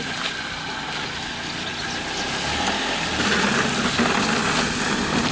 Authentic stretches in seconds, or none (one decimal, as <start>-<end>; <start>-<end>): 0.0-5.3

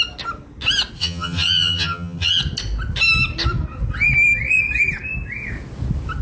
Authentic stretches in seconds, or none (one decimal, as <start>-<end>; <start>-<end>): 0.0-1.0; 2.4-6.2

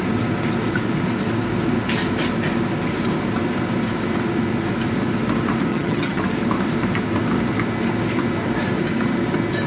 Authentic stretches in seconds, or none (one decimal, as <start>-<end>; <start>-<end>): 0.0-5.7; 6.2-9.7

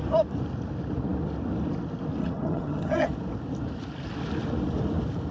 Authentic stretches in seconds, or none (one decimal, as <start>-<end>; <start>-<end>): 0.0-2.2; 3.1-5.3

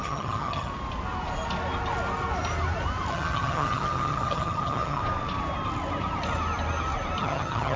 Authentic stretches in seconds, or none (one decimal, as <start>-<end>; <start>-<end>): 0.7-3.1; 5.0-7.2

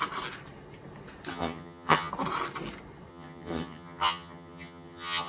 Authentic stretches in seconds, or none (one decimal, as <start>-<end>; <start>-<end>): 0.0-1.3; 2.1-3.1

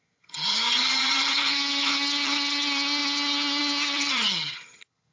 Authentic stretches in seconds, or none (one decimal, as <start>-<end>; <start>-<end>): none

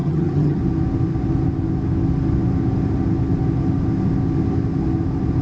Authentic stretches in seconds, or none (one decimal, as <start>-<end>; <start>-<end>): 0.6-5.4